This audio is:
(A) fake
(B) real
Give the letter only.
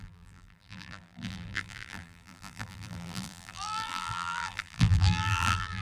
A